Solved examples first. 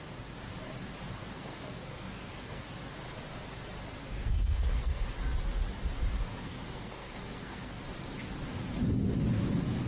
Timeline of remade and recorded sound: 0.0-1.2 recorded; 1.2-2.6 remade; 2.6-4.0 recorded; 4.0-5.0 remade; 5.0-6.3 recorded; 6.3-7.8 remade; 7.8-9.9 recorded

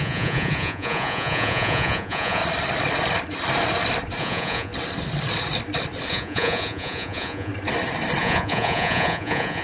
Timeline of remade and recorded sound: 0.0-2.4 remade; 2.4-4.2 recorded; 4.2-4.7 remade; 4.7-6.1 recorded; 6.1-7.5 remade; 7.5-8.2 recorded; 8.2-9.6 remade

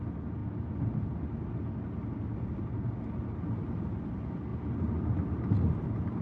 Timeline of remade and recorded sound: 0.0-6.2 recorded

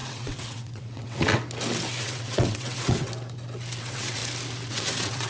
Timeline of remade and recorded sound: 0.0-1.3 remade; 1.3-2.0 recorded; 2.0-3.1 remade; 3.1-3.8 recorded; 3.8-4.2 remade; 4.2-4.7 recorded; 4.7-5.3 remade